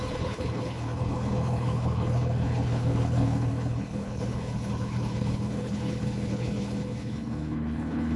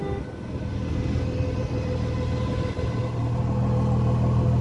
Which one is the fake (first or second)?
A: first